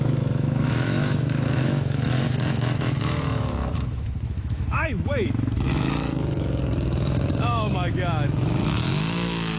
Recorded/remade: remade